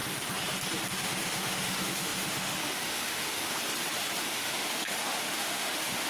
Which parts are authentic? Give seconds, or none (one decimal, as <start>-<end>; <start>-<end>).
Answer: 0.0-0.9; 3.5-4.2